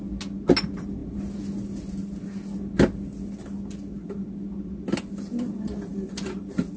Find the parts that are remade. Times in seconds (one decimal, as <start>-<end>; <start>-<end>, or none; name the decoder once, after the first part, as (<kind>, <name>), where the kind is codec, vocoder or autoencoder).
none